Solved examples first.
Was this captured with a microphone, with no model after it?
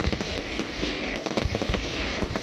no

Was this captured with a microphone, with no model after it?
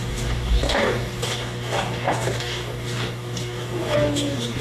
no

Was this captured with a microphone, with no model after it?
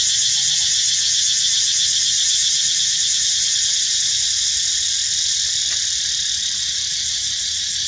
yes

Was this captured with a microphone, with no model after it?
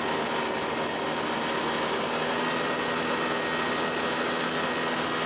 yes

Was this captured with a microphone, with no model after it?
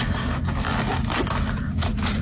yes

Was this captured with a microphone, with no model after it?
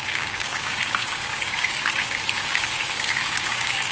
no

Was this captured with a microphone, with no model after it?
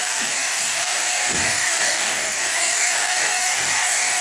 no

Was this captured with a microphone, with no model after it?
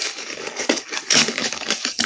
no